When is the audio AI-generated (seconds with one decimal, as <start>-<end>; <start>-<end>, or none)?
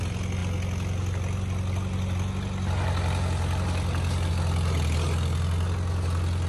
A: none